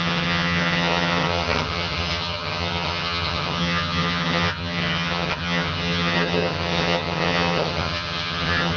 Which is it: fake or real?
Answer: fake